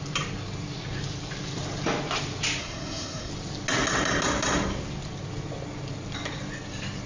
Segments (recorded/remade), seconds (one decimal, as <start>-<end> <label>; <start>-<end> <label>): 0.0-2.6 recorded; 2.6-3.3 remade; 3.3-7.1 recorded